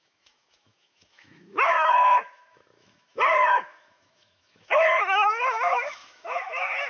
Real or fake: fake